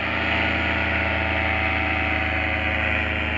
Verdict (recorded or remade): recorded